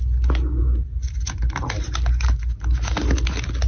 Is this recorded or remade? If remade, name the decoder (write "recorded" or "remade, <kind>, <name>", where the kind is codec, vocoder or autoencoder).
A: recorded